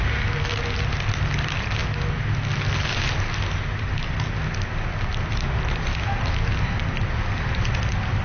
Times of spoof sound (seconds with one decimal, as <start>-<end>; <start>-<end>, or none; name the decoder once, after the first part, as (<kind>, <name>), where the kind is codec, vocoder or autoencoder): none